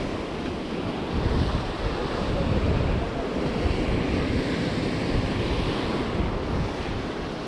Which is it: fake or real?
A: real